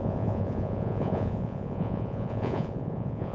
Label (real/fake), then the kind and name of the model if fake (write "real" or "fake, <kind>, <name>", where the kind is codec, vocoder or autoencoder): fake, vocoder, Vocos